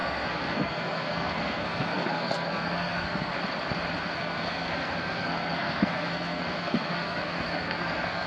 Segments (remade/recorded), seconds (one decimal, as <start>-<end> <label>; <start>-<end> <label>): 0.0-3.3 remade; 3.3-4.0 recorded; 4.0-8.3 remade